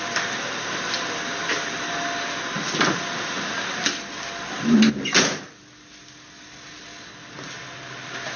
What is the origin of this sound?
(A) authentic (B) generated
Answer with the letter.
A